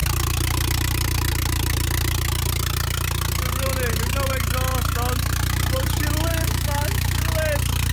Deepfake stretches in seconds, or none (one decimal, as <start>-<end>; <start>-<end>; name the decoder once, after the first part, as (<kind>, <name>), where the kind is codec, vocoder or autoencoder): 6.3-7.1 (autoencoder, DAC-VAE)